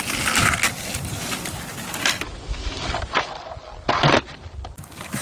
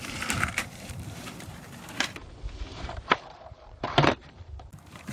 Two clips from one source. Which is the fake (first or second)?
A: second